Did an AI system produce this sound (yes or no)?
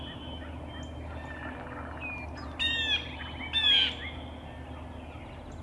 no